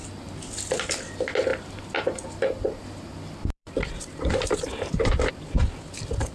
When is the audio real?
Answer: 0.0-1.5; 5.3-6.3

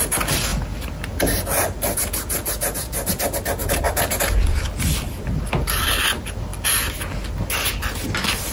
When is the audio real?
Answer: 0.0-8.5